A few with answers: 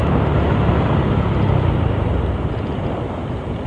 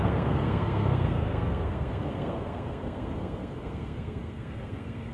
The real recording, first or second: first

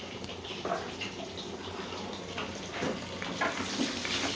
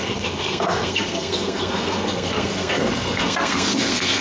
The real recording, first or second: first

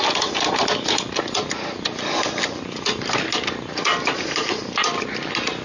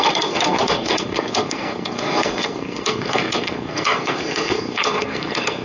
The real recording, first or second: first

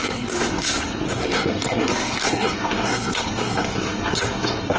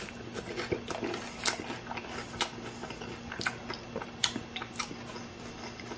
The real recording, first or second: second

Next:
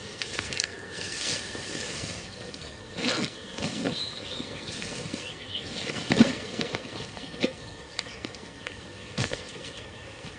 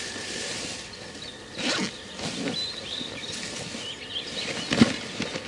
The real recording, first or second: second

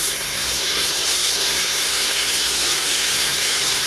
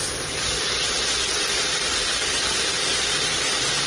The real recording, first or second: second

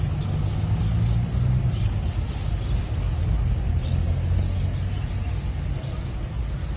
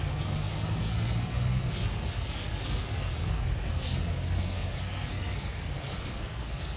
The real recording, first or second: first